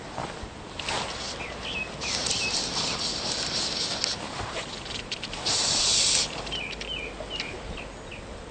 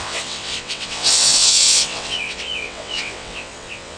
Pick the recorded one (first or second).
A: first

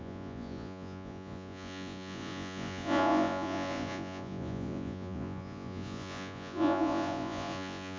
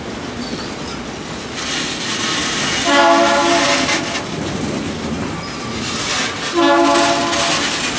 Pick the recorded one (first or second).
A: second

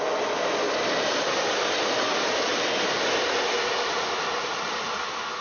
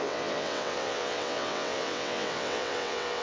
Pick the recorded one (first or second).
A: first